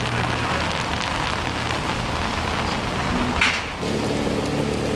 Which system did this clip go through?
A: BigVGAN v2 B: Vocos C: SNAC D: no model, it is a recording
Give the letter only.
D